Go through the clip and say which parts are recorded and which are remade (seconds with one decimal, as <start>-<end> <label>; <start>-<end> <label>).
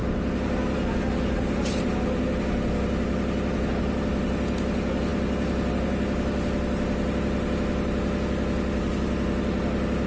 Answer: 0.0-10.1 recorded